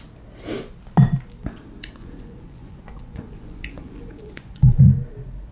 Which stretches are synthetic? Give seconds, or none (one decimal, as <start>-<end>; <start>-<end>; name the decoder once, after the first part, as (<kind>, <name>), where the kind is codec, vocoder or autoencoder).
2.0-4.8 (vocoder, Vocos)